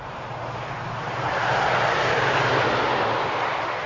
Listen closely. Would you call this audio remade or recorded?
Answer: recorded